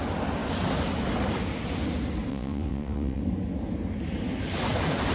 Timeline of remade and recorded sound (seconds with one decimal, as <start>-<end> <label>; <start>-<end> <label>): 0.0-2.3 recorded; 2.3-3.2 remade; 3.2-5.1 recorded